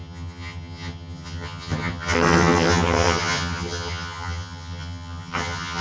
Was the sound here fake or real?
fake